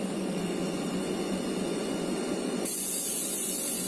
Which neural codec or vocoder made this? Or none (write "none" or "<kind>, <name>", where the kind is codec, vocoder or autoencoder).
vocoder, Vocos